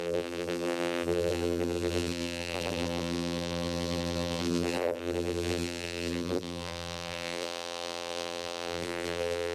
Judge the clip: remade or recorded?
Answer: remade